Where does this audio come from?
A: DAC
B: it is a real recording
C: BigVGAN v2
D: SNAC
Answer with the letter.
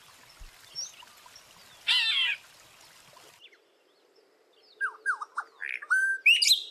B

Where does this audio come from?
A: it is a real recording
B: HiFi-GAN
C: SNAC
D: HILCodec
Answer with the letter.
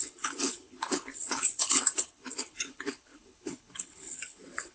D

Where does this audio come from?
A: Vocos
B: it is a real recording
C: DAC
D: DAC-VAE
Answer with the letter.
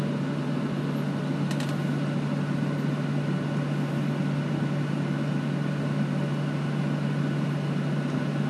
B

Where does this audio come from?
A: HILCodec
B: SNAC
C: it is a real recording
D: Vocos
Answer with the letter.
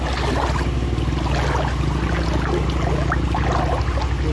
C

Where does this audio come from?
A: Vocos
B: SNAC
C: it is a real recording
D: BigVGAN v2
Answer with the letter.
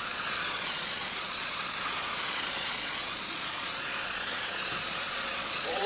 A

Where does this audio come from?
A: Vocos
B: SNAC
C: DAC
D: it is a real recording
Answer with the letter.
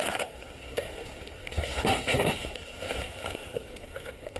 B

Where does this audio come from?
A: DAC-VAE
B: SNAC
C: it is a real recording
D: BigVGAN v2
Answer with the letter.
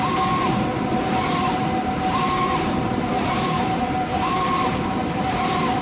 D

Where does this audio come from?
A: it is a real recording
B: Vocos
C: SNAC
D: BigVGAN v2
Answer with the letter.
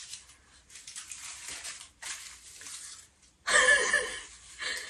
A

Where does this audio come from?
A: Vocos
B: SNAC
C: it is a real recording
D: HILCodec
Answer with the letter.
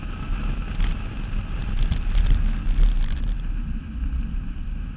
C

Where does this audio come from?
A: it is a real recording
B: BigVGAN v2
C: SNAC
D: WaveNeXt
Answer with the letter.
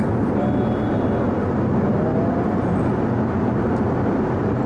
A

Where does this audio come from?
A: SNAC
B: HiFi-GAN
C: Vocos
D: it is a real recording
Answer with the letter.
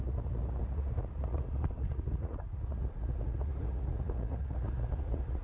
C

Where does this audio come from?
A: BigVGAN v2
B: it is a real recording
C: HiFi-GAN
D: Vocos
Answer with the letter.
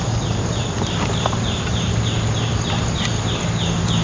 B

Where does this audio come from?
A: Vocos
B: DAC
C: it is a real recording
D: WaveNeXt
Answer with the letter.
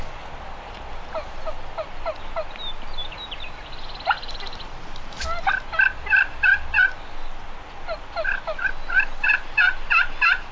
C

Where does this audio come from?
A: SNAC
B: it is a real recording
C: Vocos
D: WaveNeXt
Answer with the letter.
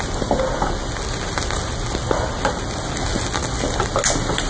B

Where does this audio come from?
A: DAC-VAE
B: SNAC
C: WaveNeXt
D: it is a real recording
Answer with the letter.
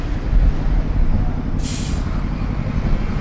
D